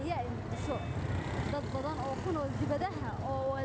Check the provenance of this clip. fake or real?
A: real